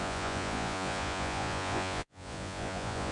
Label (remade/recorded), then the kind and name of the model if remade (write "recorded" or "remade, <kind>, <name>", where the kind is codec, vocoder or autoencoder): remade, vocoder, Vocos